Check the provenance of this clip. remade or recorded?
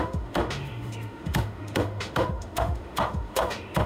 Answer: remade